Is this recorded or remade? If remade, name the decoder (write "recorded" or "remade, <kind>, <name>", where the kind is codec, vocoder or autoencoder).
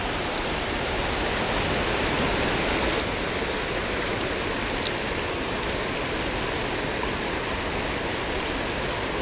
recorded